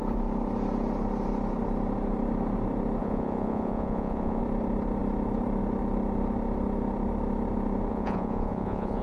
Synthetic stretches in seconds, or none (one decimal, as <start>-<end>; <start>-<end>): 3.0-4.4; 7.9-9.0